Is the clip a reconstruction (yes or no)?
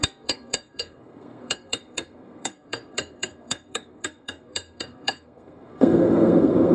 yes